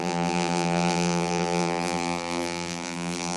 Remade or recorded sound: remade